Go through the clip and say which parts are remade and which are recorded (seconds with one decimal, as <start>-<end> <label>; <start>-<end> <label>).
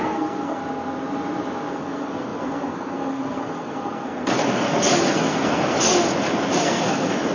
0.0-0.6 remade; 0.6-1.7 recorded; 1.7-5.9 remade; 5.9-6.6 recorded; 6.6-7.3 remade